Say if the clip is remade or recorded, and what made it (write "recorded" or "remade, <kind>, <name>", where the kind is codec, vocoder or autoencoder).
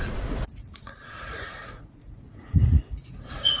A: remade, vocoder, Vocos